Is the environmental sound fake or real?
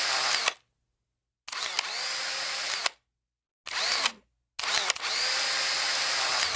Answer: real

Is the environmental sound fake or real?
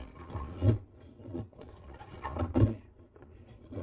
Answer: fake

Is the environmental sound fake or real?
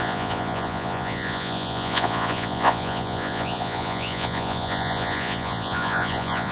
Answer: fake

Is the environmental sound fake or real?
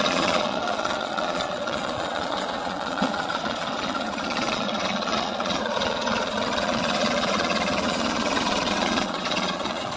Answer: fake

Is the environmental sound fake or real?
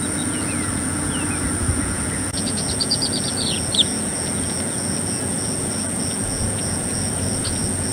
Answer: fake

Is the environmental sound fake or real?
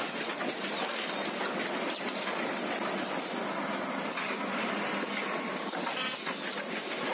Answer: real